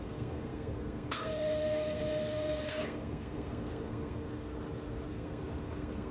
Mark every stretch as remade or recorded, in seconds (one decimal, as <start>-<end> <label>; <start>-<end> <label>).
0.0-4.5 remade; 4.5-5.1 recorded; 5.1-6.1 remade